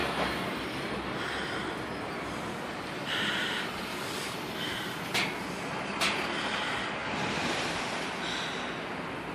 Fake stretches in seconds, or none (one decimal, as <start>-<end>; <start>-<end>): none